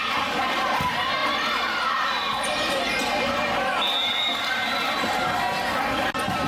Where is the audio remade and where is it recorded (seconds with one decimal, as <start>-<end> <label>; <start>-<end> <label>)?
0.0-6.5 recorded